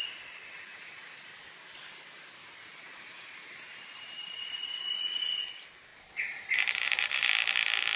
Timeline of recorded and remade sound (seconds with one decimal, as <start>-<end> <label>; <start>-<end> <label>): 0.0-2.4 recorded; 2.4-3.0 remade; 3.0-3.7 recorded; 3.7-4.9 remade; 4.9-5.9 recorded; 5.9-7.3 remade; 7.3-8.0 recorded